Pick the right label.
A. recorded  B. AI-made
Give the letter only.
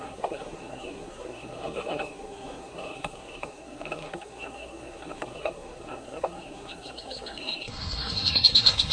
B